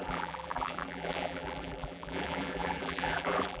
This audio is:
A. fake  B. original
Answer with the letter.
A